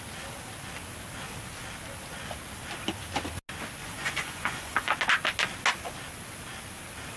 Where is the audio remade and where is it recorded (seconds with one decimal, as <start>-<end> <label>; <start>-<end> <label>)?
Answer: 0.0-3.8 recorded; 3.8-4.9 remade; 4.9-7.2 recorded